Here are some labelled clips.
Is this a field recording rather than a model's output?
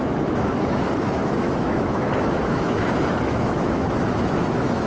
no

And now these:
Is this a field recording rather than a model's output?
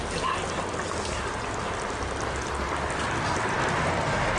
yes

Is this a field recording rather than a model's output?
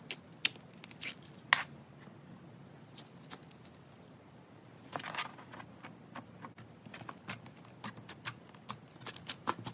yes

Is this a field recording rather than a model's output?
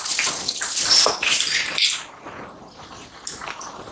yes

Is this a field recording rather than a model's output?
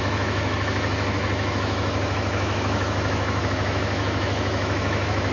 no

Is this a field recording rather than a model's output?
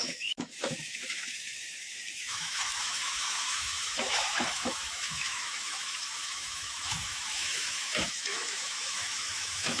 no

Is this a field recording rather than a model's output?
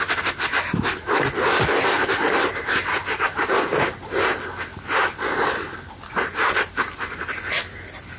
yes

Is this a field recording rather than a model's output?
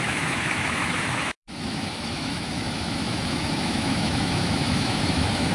no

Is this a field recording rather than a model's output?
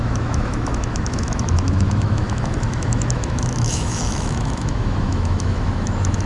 no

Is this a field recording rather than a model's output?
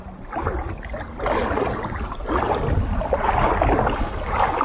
yes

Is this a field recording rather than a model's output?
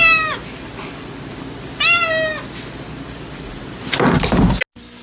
yes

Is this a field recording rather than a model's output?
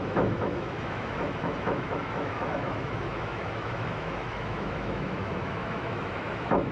no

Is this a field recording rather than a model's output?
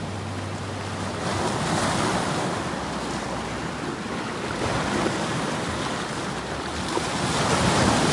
yes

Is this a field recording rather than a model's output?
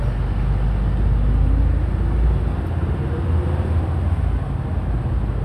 yes